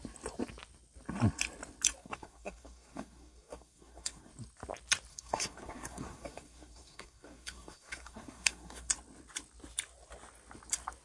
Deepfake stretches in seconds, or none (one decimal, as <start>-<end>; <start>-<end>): 2.0-4.3; 5.1-8.9